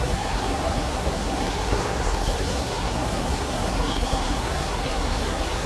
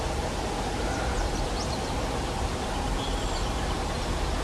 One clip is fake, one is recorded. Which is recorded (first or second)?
second